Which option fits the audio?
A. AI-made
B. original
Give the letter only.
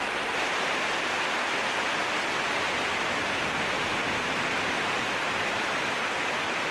B